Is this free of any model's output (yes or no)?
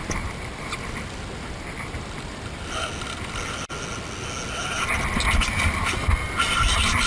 yes